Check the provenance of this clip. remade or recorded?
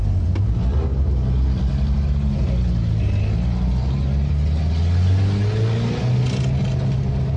recorded